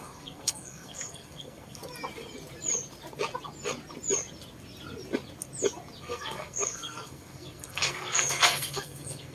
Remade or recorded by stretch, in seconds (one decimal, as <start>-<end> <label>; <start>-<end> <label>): 0.0-1.8 remade; 1.8-6.0 recorded; 6.0-9.3 remade